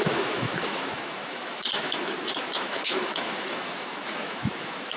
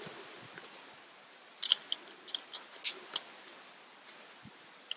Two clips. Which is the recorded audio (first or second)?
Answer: second